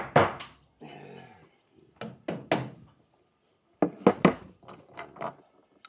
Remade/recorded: recorded